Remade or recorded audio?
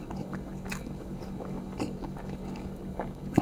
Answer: remade